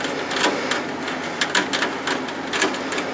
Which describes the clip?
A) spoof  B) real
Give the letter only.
B